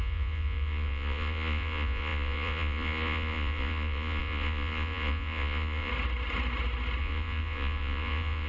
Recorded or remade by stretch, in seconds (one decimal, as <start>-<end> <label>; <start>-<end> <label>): 0.0-5.9 remade; 5.9-7.0 recorded; 7.0-8.5 remade